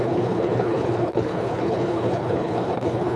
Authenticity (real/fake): fake